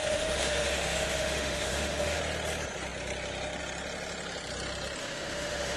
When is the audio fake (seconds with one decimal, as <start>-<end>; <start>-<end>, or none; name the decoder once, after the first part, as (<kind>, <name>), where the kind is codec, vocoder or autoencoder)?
0.0-2.2 (autoencoder, DAC-VAE); 5.0-5.8